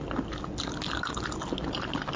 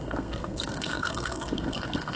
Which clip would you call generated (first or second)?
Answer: second